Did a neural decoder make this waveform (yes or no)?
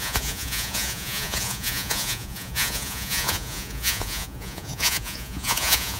yes